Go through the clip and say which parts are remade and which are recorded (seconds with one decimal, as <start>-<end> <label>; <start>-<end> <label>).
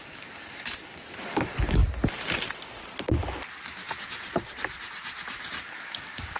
0.0-1.8 remade; 1.8-5.6 recorded; 5.6-6.4 remade